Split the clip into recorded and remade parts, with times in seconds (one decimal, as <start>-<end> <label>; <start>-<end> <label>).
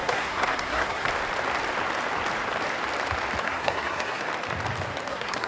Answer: 0.0-1.1 remade; 1.1-3.4 recorded; 3.4-4.3 remade; 4.3-5.1 recorded; 5.1-5.5 remade